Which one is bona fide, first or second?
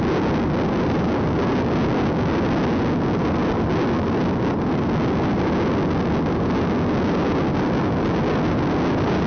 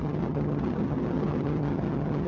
first